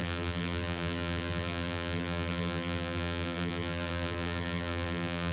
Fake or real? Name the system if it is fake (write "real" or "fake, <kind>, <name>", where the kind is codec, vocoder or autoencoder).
fake, vocoder, BigVGAN v2